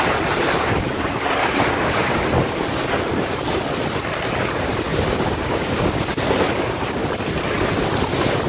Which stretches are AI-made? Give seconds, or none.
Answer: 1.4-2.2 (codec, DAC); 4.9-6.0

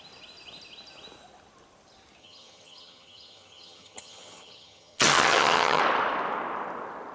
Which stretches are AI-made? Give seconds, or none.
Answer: 2.2-5.8 (vocoder, HiFi-GAN)

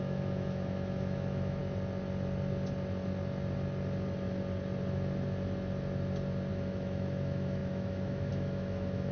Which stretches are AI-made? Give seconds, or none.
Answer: 0.0-1.6 (autoencoder, DAC-VAE); 6.5-9.1

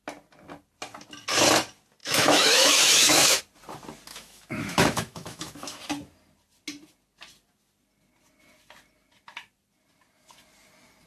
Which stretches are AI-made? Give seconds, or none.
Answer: 2.0-3.4 (autoencoder, DAC-VAE); 4.1-5.8

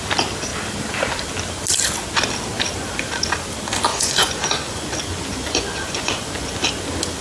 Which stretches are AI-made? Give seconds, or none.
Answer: 3.9-6.6 (vocoder, Vocos)

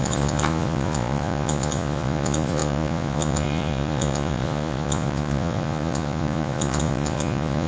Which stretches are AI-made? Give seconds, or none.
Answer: 0.0-7.7 (vocoder, Vocos)